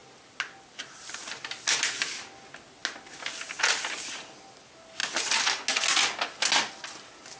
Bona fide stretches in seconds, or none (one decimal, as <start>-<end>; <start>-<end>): 0.0-7.4